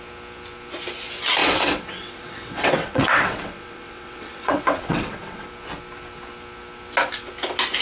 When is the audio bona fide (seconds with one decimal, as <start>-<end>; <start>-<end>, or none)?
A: 0.0-1.4; 5.5-7.8